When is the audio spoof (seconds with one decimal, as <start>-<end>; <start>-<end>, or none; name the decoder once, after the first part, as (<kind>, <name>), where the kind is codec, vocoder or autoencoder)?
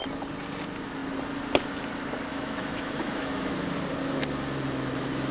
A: 2.3-3.5 (autoencoder, DAC-VAE)